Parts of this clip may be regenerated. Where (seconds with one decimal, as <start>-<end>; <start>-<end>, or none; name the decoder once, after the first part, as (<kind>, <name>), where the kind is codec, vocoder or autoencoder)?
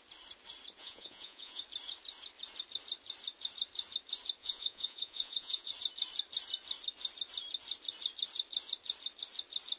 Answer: 0.8-1.6 (vocoder, Vocos); 4.4-5.7